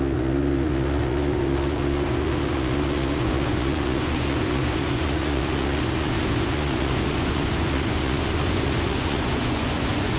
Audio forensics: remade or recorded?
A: remade